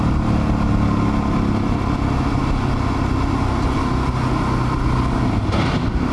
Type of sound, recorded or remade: recorded